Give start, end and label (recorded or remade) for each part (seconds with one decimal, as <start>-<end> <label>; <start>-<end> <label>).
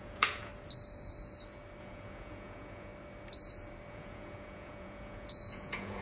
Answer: 0.0-0.5 remade; 0.5-1.8 recorded; 1.8-2.9 remade; 2.9-3.9 recorded; 3.9-6.0 remade